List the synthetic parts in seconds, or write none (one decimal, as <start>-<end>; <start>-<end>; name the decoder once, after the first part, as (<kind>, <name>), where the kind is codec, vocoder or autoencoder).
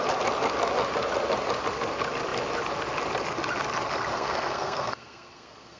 4.1-5.8 (codec, SNAC)